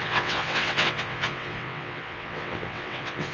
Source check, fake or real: fake